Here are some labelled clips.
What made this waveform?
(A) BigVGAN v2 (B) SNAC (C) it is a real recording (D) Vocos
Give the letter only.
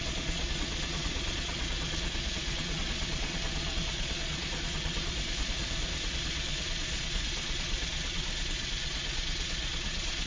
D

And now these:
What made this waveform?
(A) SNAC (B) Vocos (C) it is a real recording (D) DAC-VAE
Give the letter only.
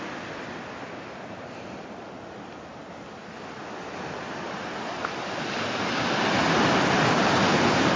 C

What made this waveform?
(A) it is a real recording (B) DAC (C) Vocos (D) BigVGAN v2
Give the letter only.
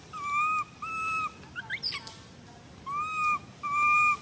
A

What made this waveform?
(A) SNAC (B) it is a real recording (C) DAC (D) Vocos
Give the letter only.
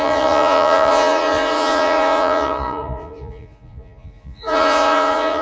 D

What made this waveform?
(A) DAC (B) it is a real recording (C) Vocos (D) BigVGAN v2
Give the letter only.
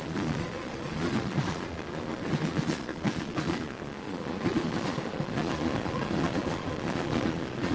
C